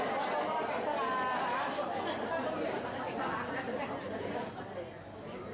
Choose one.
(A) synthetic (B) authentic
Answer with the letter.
B